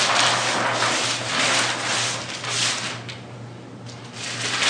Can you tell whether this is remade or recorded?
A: recorded